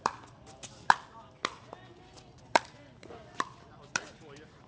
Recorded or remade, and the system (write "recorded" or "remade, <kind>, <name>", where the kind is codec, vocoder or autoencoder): remade, vocoder, BigVGAN v2